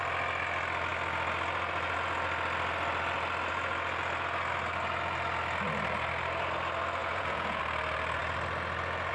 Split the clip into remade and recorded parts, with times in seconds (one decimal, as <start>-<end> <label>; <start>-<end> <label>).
0.0-7.0 recorded; 7.0-7.6 remade; 7.6-9.1 recorded

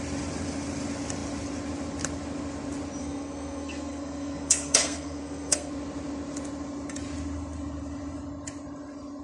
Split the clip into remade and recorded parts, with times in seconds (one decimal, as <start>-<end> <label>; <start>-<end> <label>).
0.0-3.0 recorded; 3.0-5.7 remade; 5.7-9.2 recorded

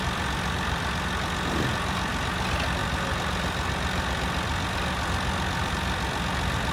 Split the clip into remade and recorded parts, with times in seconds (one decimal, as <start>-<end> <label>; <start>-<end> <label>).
0.0-6.7 recorded

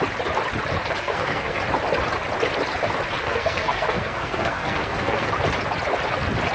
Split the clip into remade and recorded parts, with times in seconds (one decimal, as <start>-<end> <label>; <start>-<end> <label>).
0.0-0.8 recorded; 0.8-1.6 remade; 1.6-3.2 recorded; 3.2-5.3 remade; 5.3-6.5 recorded

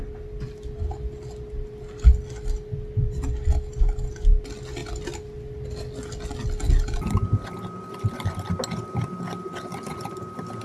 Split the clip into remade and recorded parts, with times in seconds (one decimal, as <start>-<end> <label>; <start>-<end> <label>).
0.0-10.6 recorded

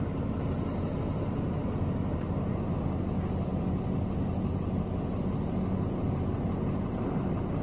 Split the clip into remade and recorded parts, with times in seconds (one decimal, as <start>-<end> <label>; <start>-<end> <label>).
0.0-7.6 recorded